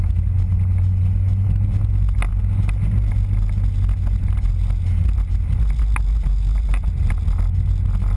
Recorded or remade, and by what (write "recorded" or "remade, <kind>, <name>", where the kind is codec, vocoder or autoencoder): recorded